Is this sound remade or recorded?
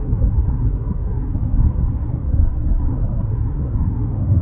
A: remade